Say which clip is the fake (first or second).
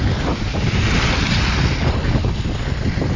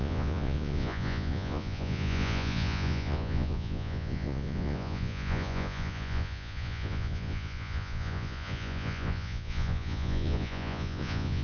second